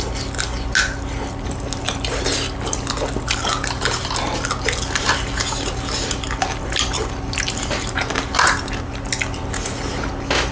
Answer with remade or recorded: recorded